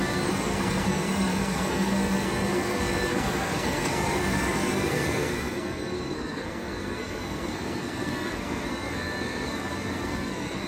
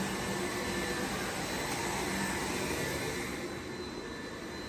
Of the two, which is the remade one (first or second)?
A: first